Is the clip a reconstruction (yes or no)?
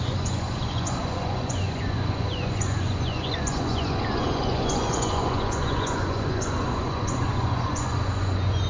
yes